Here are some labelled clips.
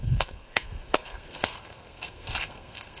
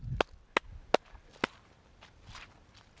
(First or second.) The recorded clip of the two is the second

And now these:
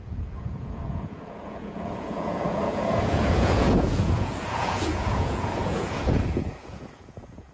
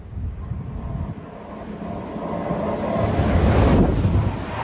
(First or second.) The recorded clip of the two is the second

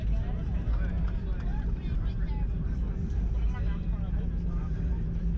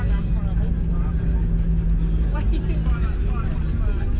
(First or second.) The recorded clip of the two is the second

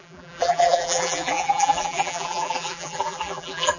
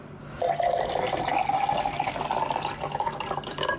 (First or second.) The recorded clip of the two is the second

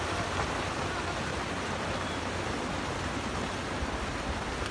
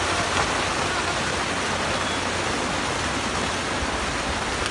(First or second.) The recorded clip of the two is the second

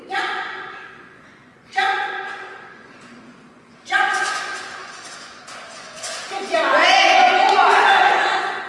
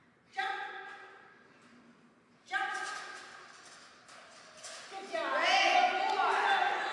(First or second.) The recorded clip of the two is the second